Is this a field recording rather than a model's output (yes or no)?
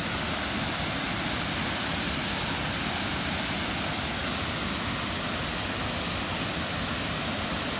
yes